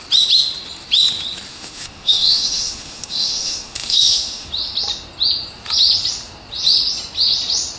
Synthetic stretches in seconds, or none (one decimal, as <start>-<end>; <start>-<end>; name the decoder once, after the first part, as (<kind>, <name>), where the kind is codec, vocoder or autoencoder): 1.5-4.5 (autoencoder, DAC-VAE)